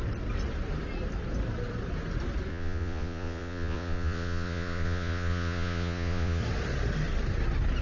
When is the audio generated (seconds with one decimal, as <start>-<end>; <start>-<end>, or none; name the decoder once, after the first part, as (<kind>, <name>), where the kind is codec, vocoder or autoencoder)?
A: 2.5-6.4 (vocoder, Vocos)